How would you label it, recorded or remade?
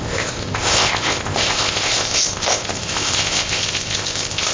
remade